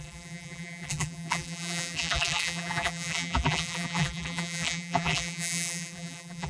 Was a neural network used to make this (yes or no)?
yes